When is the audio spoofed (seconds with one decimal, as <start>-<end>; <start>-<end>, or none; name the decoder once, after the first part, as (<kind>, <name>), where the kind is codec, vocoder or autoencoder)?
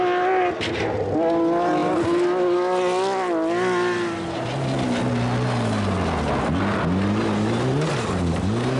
none